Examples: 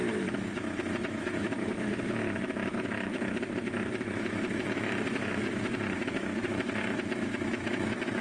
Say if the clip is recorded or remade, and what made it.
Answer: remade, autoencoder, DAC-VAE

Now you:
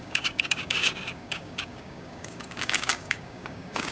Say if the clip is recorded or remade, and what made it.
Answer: remade, codec, DAC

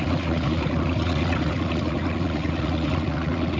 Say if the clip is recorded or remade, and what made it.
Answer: remade, vocoder, Vocos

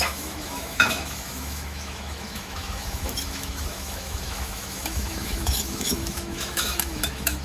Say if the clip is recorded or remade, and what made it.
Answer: remade, autoencoder, DAC-VAE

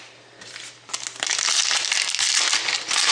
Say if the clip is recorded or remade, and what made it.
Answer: recorded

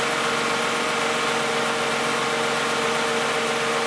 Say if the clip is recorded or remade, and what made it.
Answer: recorded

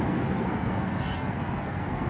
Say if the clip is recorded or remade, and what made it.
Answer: remade, codec, SNAC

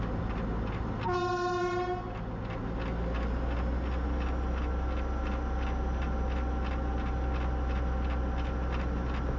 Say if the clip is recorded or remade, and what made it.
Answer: recorded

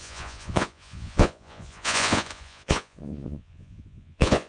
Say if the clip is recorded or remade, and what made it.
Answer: remade, vocoder, Vocos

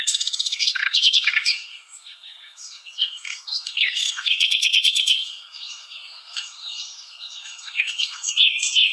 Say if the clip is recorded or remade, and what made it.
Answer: remade, codec, SNAC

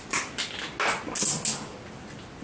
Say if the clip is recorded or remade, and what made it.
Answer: recorded